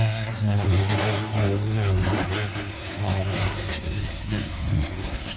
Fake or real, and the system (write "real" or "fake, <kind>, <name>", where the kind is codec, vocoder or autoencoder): fake, codec, SNAC